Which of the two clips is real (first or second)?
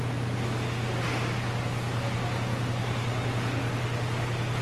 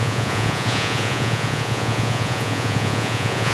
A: first